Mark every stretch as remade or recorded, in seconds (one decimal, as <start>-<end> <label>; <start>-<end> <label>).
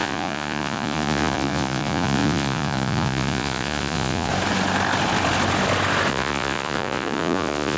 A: 0.0-4.3 remade; 4.3-6.1 recorded; 6.1-7.8 remade